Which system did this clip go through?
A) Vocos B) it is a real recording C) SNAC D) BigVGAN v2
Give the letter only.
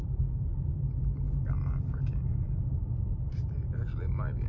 D